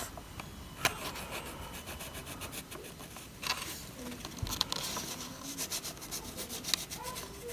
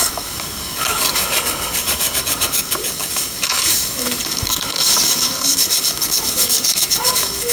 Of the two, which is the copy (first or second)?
second